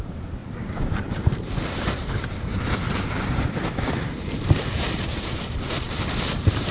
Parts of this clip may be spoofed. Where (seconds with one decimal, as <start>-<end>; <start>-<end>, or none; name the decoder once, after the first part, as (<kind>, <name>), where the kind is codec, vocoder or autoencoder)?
0.0-6.7 (vocoder, BigVGAN v2)